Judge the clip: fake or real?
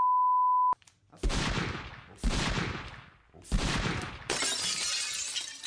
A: real